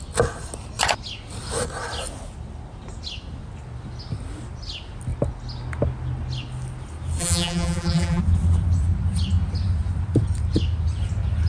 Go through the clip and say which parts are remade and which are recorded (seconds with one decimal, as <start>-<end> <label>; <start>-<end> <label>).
0.0-7.2 recorded; 7.2-8.2 remade; 8.2-11.5 recorded